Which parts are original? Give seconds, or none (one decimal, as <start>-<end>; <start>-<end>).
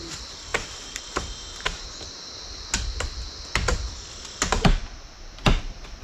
0.0-6.0